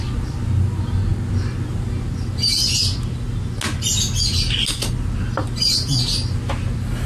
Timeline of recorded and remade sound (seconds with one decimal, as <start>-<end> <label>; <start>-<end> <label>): 0.0-7.1 recorded